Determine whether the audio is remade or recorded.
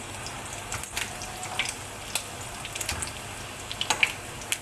recorded